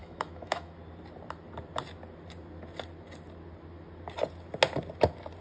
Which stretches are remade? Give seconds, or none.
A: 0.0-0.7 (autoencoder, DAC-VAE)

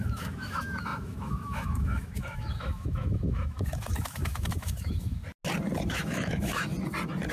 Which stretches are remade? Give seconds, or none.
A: 0.0-5.2 (autoencoder, DAC-VAE); 5.9-6.7

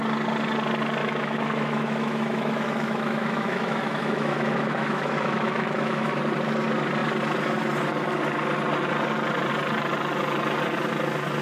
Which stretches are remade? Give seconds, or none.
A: 1.0-6.2 (autoencoder, DAC-VAE)